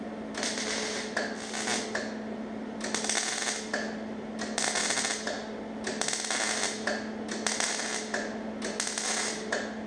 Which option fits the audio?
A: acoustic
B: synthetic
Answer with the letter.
A